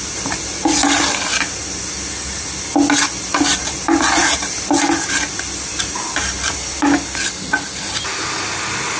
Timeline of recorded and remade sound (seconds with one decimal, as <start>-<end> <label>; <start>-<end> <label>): 0.0-9.0 recorded